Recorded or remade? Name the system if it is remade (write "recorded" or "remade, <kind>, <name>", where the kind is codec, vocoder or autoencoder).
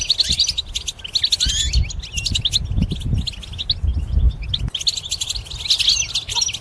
recorded